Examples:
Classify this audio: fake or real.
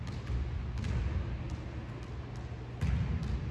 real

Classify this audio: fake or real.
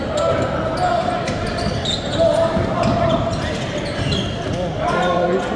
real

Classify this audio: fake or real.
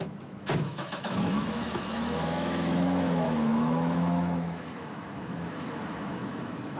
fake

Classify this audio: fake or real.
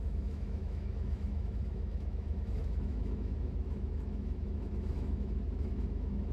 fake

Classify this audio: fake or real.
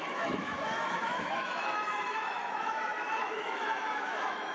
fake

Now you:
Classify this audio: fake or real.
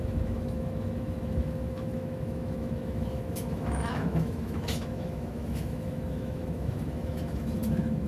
fake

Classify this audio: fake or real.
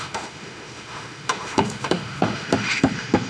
fake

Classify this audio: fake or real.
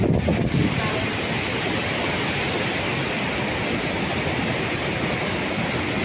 real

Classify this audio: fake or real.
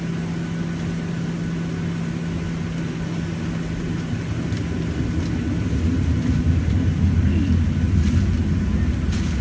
real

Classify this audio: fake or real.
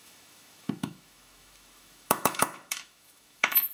fake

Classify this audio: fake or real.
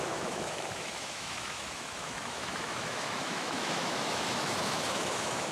fake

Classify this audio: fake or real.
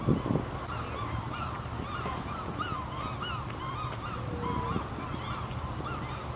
real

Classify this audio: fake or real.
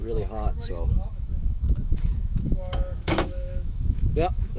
fake